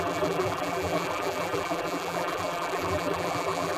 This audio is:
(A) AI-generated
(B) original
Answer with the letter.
A